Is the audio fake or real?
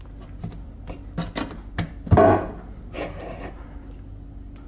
real